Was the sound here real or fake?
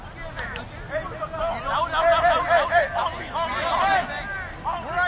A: real